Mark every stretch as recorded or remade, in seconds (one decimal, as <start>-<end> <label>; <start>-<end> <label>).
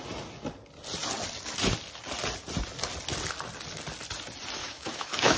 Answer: 0.0-4.6 recorded; 4.6-5.4 remade